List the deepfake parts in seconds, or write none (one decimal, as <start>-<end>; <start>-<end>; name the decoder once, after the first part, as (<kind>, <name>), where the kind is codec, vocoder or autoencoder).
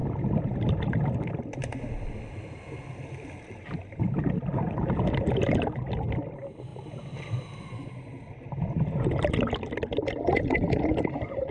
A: none